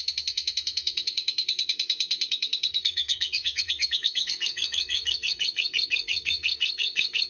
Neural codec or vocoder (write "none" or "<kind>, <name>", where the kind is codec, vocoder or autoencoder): codec, SNAC